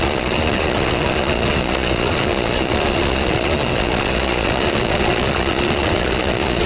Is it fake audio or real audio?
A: fake